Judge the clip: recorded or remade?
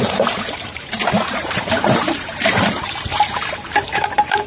remade